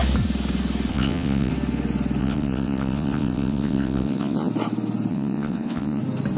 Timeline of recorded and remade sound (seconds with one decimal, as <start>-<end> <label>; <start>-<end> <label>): 0.0-0.9 recorded; 0.9-1.5 remade; 1.5-2.2 recorded; 2.2-4.5 remade; 4.5-5.1 recorded; 5.1-6.0 remade; 6.0-6.4 recorded

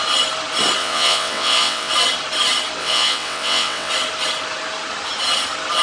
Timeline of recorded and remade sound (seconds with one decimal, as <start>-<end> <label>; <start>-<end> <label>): 0.0-0.8 recorded; 0.8-1.9 remade; 1.9-2.8 recorded; 2.8-3.9 remade; 3.9-5.8 recorded